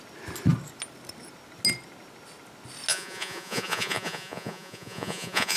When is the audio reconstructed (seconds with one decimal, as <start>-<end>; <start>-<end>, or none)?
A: 2.9-5.6